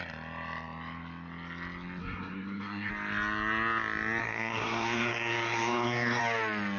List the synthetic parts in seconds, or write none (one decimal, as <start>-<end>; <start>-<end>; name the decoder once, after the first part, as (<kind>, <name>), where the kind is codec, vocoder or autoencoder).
2.0-2.9 (codec, SNAC); 4.2-6.2